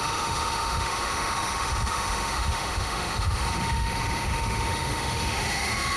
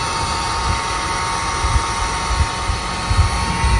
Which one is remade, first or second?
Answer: first